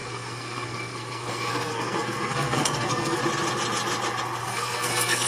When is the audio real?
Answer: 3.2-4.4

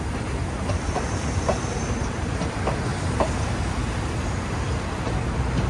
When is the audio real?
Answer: 2.9-3.4

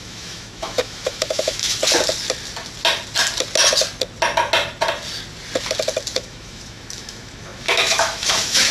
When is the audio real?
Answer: 1.8-6.1

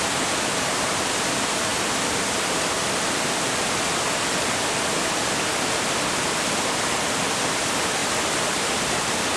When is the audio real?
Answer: 0.0-9.4

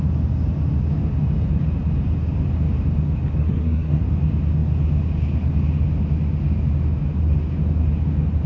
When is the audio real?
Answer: 0.0-3.4; 4.0-8.5

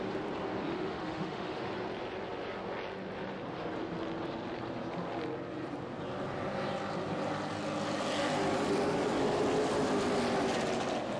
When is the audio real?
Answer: 0.0-0.7; 1.7-11.2

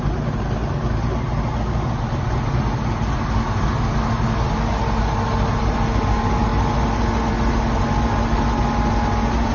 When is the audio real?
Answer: 0.0-9.5

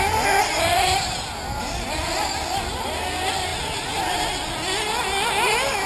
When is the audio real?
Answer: 0.0-5.9